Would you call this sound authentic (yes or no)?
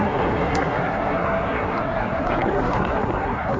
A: no